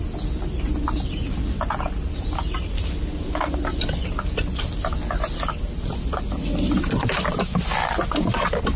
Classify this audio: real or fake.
real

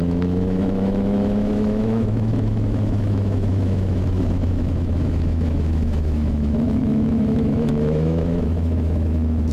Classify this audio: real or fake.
fake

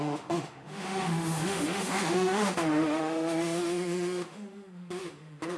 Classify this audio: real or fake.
fake